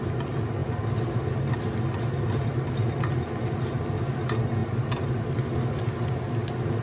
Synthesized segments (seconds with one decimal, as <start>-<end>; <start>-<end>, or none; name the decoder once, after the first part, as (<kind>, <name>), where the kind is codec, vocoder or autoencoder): none